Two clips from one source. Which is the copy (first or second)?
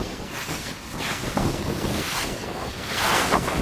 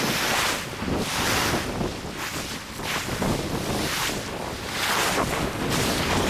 first